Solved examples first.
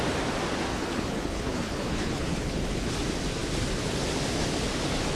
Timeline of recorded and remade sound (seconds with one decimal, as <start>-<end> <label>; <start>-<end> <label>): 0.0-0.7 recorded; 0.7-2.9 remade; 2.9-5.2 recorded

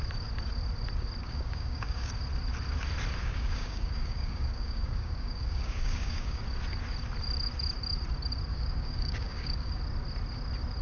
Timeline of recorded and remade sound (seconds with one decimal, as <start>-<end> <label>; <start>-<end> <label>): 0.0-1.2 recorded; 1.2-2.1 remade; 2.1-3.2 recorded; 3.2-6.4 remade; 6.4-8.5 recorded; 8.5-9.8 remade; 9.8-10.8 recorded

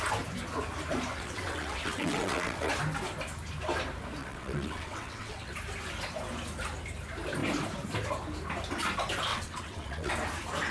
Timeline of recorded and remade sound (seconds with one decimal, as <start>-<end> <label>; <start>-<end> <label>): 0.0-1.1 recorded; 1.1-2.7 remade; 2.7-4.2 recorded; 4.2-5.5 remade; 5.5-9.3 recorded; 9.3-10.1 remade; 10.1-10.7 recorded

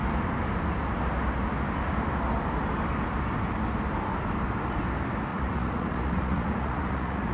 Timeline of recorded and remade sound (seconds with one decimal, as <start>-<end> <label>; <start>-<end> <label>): 0.0-5.3 recorded; 5.3-7.3 remade